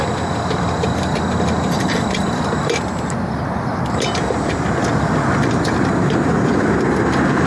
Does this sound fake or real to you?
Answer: real